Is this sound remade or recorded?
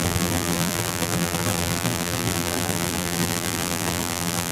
remade